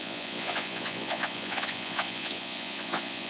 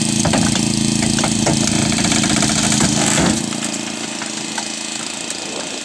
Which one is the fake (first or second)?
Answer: first